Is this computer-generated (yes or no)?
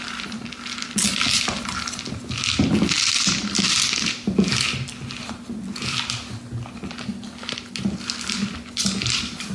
no